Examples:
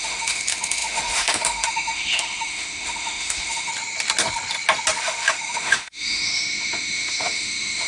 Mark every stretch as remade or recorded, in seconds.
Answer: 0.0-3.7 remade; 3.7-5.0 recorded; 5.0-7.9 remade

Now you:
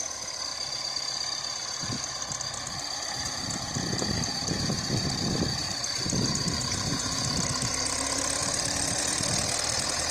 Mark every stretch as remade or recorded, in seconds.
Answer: 0.0-0.5 recorded; 0.5-5.1 remade; 5.1-5.5 recorded; 5.5-8.0 remade; 8.0-8.4 recorded; 8.4-9.0 remade; 9.0-10.1 recorded

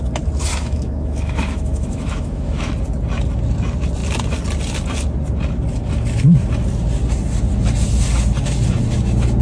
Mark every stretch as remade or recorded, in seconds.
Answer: 0.0-0.5 recorded; 0.5-2.7 remade; 2.7-9.4 recorded

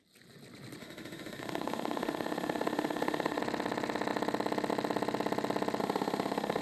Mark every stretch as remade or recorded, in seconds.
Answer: 0.0-0.8 recorded; 0.8-3.4 remade; 3.4-5.8 recorded; 5.8-6.6 remade

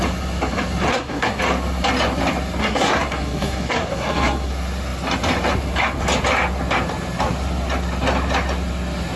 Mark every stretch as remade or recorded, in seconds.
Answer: 0.0-0.9 recorded; 0.9-1.4 remade; 1.4-2.6 recorded; 2.6-4.5 remade; 4.5-9.2 recorded

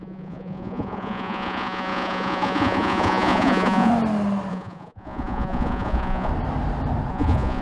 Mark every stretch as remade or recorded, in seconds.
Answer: 0.0-3.9 remade; 3.9-4.5 recorded; 4.5-6.3 remade; 6.3-7.1 recorded; 7.1-7.6 remade

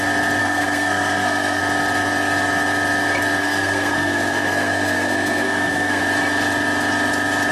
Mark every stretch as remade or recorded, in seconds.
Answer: 0.0-0.4 recorded; 0.4-1.6 remade; 1.6-3.4 recorded; 3.4-6.0 remade; 6.0-7.5 recorded